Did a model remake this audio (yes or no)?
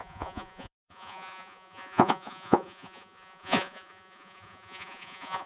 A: yes